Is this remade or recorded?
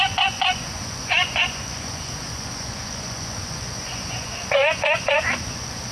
remade